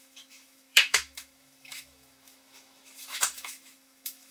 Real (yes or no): no